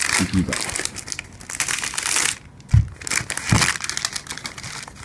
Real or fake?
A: real